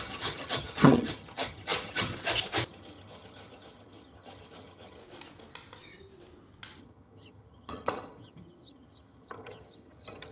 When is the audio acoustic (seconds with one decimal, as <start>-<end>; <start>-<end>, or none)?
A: 2.1-2.7; 5.0-6.8